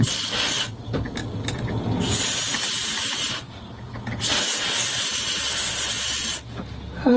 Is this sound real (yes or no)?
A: yes